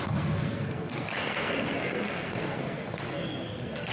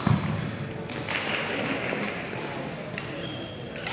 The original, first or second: second